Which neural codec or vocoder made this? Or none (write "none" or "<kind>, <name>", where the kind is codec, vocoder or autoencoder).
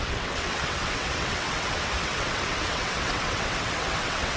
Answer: vocoder, WaveNeXt